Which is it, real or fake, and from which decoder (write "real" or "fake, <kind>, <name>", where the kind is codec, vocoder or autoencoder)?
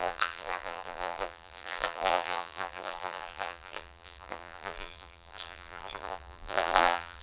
fake, vocoder, BigVGAN v2